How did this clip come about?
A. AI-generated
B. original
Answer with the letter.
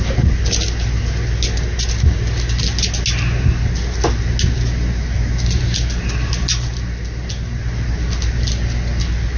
B